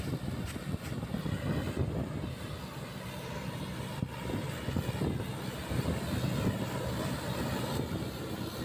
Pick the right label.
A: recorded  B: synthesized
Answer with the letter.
A